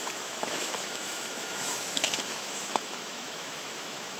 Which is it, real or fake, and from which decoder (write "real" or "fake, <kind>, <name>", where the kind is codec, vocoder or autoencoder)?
fake, autoencoder, DAC-VAE